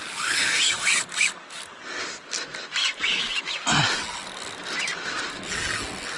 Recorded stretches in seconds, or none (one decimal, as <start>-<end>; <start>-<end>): 1.6-2.8; 3.4-6.2